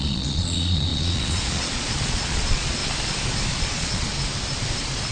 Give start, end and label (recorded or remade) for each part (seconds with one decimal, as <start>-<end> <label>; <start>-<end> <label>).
0.0-2.8 remade; 2.8-3.5 recorded; 3.5-4.1 remade; 4.1-5.1 recorded